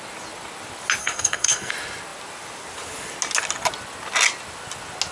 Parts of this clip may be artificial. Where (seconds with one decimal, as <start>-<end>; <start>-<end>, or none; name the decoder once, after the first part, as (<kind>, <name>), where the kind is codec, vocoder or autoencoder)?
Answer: 1.0-1.7 (codec, SNAC)